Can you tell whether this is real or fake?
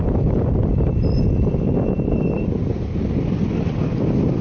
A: real